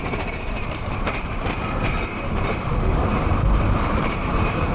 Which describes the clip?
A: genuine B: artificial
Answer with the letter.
B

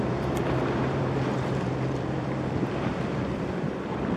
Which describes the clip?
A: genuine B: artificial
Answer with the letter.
B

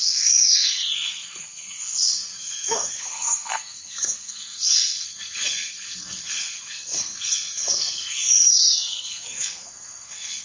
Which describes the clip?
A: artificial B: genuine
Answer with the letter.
A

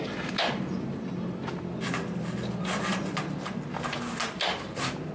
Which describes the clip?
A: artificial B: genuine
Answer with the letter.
B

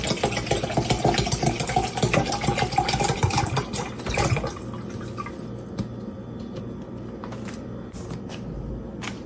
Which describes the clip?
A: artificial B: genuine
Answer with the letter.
B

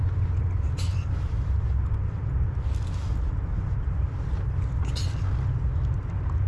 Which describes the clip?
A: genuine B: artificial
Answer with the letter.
A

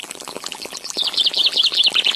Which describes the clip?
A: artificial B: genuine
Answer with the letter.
A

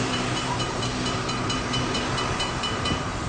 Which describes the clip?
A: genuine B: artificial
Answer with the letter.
B